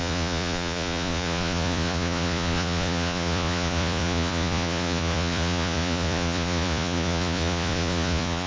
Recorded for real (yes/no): no